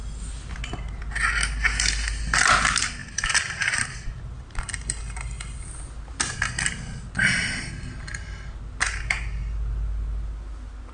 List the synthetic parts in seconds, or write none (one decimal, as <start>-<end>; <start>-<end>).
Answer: 3.0-5.6